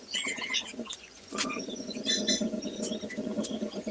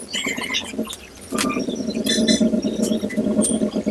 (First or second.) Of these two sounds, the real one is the second